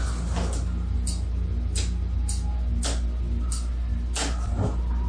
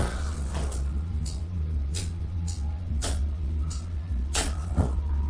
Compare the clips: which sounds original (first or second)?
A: first